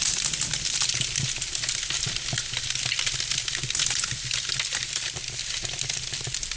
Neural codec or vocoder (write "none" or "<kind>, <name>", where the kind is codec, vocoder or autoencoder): none